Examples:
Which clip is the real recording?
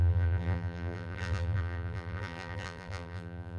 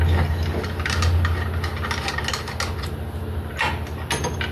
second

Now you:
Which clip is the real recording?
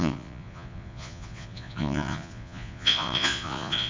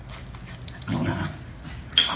second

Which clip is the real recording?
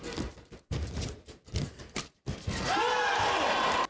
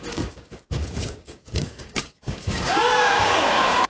first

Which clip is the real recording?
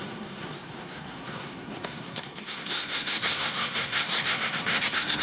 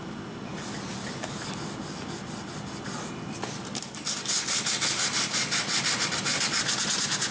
second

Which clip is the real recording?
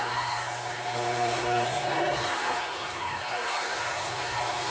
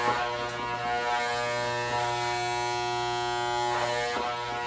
second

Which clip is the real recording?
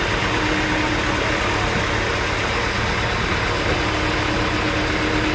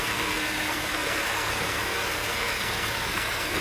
first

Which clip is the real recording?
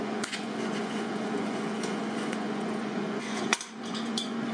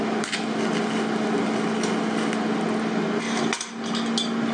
second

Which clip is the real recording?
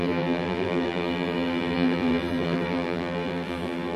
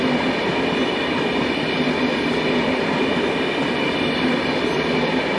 second